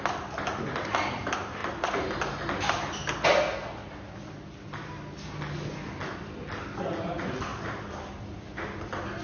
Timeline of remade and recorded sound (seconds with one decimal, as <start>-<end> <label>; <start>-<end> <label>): 0.0-9.2 recorded

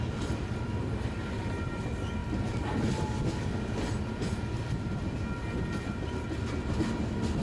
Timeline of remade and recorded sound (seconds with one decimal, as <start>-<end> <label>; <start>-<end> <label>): 0.0-7.4 recorded